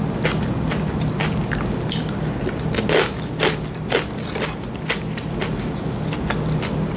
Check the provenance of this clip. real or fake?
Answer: real